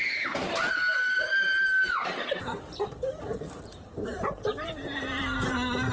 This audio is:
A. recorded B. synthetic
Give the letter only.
A